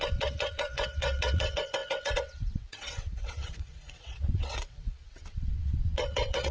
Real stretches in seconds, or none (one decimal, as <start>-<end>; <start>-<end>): none